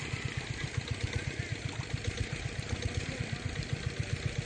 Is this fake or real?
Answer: real